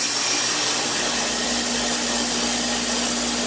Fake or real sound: real